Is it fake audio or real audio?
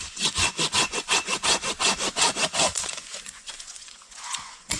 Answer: fake